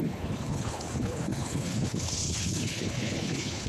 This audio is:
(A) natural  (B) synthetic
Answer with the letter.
B